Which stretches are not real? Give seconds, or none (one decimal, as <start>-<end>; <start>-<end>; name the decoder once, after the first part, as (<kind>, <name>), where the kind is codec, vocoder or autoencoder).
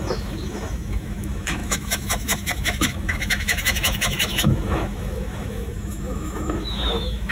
0.0-7.3 (autoencoder, DAC-VAE)